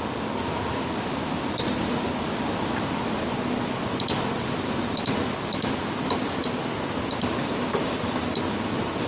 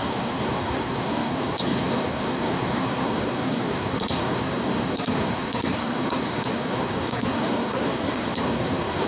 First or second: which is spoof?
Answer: second